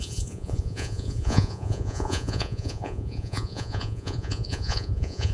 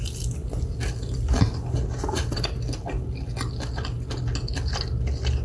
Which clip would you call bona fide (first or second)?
second